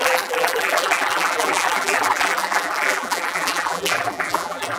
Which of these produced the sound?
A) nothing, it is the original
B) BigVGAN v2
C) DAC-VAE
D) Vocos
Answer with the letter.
B